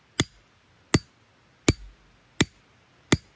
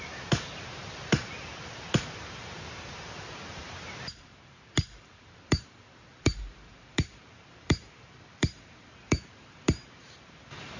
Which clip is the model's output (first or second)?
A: second